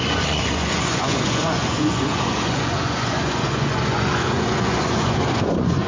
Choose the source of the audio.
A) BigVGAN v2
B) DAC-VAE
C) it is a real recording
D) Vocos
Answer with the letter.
D